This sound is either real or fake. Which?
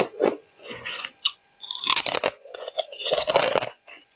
fake